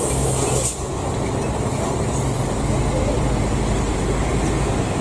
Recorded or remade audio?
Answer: recorded